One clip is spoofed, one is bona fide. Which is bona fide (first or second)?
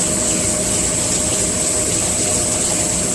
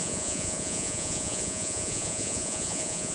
first